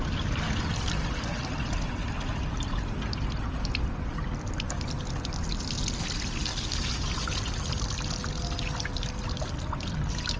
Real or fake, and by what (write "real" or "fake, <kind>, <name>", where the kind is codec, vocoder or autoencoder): real